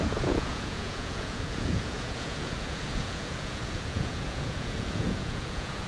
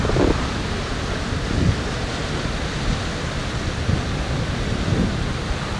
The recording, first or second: second